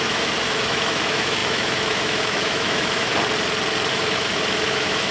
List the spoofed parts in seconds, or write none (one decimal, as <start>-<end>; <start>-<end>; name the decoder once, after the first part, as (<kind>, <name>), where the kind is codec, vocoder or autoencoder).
0.0-3.1 (autoencoder, DAC-VAE); 3.9-5.1